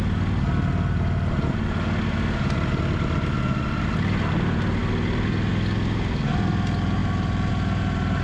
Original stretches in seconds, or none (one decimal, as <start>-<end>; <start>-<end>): 0.0-8.2